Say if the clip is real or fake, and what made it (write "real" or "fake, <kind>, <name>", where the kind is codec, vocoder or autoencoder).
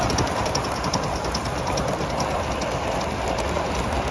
real